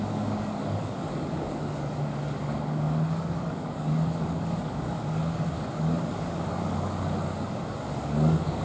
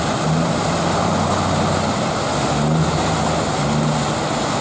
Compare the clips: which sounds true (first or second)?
second